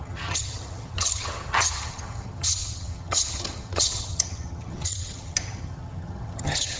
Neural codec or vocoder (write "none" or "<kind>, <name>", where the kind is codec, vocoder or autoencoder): vocoder, HiFi-GAN